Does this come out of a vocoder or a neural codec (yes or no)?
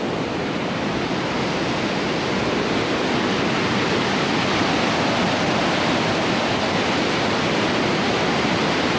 no